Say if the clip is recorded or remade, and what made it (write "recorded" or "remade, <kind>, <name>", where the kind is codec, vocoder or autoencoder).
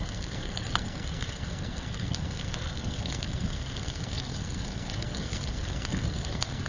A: remade, codec, SNAC